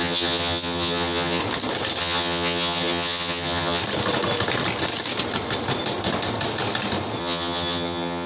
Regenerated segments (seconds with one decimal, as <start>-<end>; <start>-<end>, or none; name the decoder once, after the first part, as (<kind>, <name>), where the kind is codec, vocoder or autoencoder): 0.0-1.4 (vocoder, HiFi-GAN); 2.0-3.8; 7.2-8.3